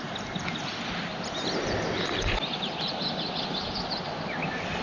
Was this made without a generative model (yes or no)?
yes